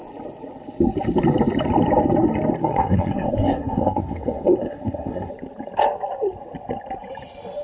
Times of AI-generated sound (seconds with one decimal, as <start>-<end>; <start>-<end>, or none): 2.6-5.3